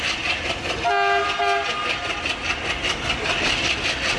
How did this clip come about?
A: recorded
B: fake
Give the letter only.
A